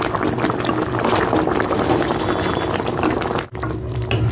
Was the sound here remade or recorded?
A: recorded